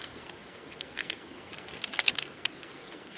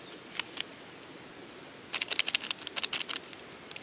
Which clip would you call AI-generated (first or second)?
first